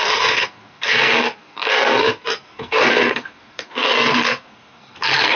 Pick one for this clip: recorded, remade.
remade